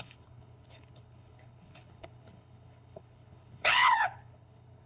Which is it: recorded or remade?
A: remade